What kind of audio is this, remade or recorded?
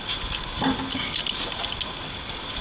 recorded